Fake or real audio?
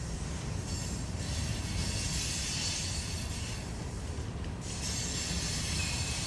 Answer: real